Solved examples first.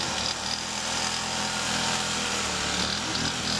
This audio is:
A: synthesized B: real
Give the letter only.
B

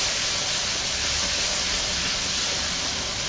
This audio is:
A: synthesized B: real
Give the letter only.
B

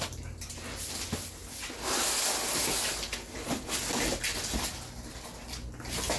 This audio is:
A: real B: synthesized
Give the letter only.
A